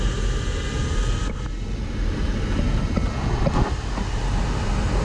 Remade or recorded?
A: recorded